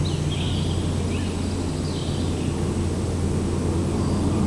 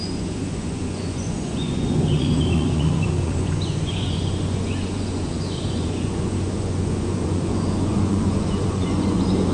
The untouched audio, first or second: first